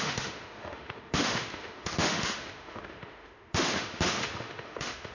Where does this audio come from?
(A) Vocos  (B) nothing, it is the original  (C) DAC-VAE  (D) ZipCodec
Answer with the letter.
C